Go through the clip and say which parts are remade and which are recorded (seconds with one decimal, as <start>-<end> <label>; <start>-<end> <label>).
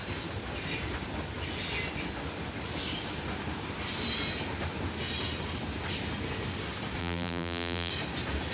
0.0-7.0 recorded; 7.0-7.9 remade; 7.9-8.5 recorded